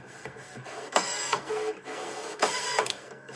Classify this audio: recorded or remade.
remade